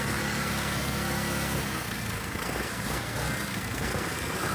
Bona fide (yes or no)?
no